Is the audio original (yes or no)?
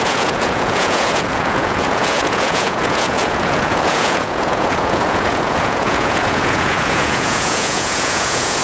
no